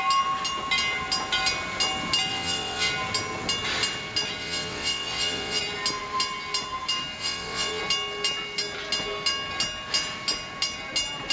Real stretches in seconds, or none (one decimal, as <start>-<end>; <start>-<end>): 0.0-2.3; 2.9-4.4; 5.6-7.2; 7.8-11.3